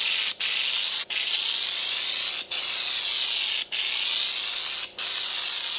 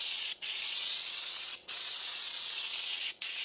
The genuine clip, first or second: first